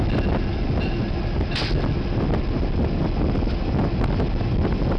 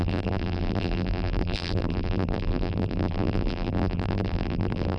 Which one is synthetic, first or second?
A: second